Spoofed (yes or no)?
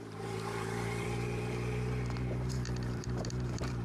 yes